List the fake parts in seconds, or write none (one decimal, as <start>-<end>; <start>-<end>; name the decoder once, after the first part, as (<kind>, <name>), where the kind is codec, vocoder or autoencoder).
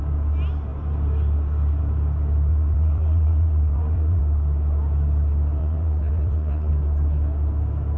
2.5-4.2 (vocoder, WaveNeXt); 5.6-6.7